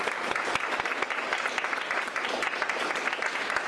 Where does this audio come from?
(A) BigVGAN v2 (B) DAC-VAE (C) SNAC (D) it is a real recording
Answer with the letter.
D